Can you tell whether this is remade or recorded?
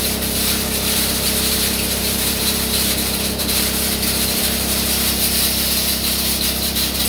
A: remade